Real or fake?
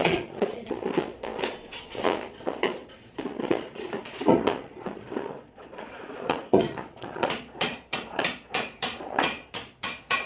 fake